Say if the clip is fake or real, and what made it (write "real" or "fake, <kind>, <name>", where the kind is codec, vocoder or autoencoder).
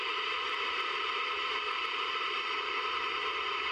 real